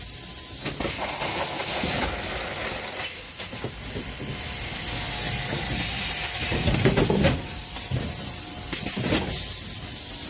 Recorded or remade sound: recorded